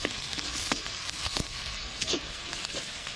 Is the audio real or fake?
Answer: fake